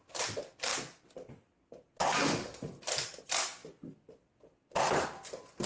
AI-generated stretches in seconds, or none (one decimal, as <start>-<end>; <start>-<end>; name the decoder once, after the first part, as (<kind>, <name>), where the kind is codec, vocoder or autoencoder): none